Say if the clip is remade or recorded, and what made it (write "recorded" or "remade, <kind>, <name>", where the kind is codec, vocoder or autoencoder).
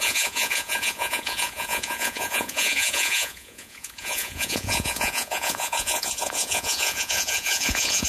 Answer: remade, vocoder, Vocos